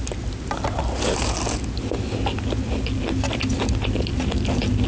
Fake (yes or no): no